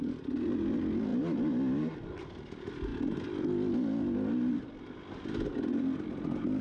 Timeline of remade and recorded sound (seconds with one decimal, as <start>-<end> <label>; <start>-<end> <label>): 0.0-6.6 recorded